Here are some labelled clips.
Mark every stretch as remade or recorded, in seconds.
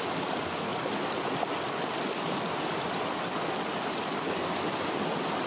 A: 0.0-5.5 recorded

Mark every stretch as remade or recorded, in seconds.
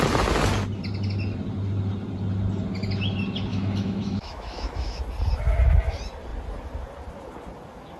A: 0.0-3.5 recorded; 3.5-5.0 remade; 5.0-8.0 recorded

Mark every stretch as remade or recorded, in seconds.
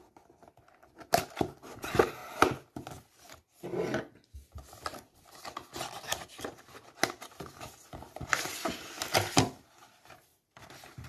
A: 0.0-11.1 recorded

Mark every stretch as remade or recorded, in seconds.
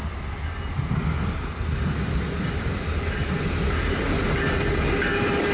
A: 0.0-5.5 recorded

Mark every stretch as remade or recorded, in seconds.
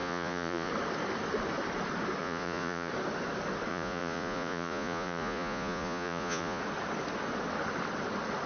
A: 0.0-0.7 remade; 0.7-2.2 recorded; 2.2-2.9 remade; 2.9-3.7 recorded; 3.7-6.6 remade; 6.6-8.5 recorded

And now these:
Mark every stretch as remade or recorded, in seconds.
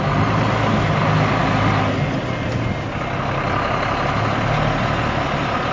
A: 0.0-5.7 recorded